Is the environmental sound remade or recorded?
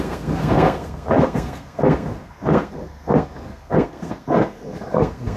remade